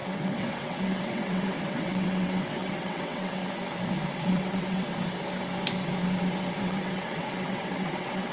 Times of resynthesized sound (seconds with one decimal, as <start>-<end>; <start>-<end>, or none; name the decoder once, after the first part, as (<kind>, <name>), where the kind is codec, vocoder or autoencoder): 0.0-3.4 (vocoder, WaveNeXt); 4.1-4.9; 6.6-8.3